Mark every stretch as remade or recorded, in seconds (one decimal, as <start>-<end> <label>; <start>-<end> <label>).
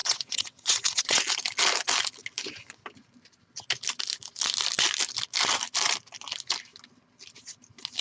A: 0.0-1.2 remade; 1.2-8.0 recorded